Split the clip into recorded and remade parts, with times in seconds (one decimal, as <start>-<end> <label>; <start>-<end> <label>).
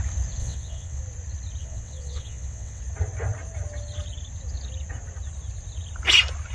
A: 0.0-0.4 recorded; 0.4-1.0 remade; 1.0-1.6 recorded; 1.6-2.8 remade; 2.8-6.5 recorded